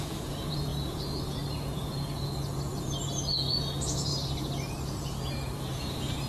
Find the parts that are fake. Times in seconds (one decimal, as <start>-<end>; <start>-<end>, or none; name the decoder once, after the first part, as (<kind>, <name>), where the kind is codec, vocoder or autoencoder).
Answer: 0.0-2.7 (vocoder, Vocos); 3.3-4.1; 5.0-6.3